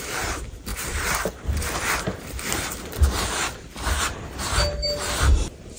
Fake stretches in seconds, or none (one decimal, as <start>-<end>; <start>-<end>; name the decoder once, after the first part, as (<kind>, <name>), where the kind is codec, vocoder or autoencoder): 0.7-4.2 (vocoder, BigVGAN v2)